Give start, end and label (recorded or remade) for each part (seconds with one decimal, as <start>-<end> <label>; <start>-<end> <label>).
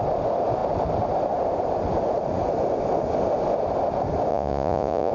0.0-4.3 recorded; 4.3-5.1 remade